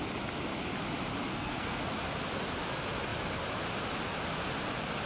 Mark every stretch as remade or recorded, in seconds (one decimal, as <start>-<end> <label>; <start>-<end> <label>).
0.0-1.3 recorded; 1.3-1.8 remade; 1.8-5.1 recorded